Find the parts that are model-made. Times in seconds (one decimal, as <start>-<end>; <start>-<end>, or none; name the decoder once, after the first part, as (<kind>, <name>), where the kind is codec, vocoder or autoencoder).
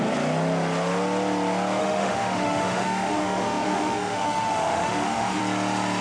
1.8-5.4 (autoencoder, DAC-VAE)